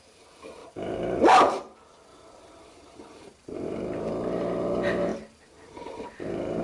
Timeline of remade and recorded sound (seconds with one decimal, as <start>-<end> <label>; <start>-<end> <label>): 0.0-2.1 recorded; 2.1-3.8 remade; 3.8-5.1 recorded; 5.1-6.6 remade